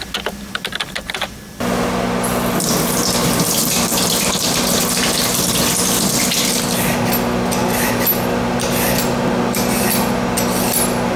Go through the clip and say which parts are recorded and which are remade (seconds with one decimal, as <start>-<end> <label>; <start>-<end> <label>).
0.0-11.2 recorded